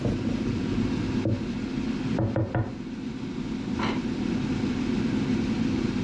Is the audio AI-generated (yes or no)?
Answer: no